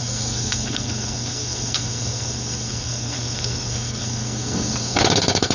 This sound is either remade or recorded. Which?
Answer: remade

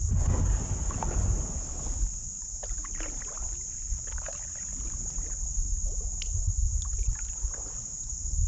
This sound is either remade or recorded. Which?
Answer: recorded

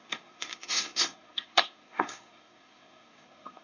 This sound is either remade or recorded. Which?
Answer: remade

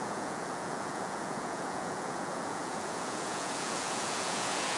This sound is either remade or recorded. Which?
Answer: remade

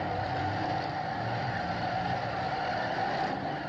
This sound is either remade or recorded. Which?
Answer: recorded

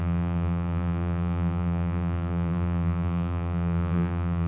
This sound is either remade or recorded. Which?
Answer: remade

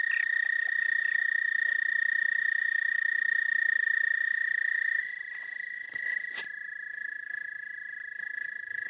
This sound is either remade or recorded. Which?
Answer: recorded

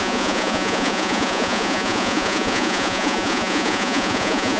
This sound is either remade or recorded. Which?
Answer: remade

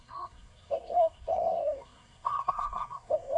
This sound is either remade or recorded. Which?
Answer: remade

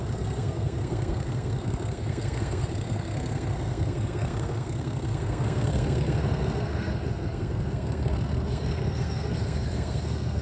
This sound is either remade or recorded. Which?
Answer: remade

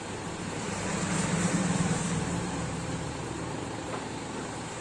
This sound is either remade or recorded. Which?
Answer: remade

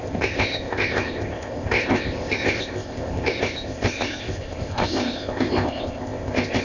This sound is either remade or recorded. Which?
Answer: remade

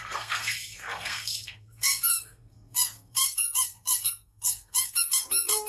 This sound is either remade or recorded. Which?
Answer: remade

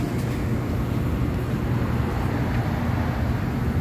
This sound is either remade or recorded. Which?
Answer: recorded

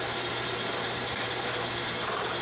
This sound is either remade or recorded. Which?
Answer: remade